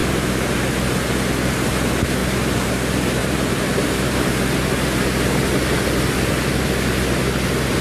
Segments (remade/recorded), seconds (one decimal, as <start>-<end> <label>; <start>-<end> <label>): 0.0-0.6 remade; 0.6-2.2 recorded; 2.2-2.7 remade; 2.7-3.2 recorded; 3.2-4.3 remade; 4.3-7.8 recorded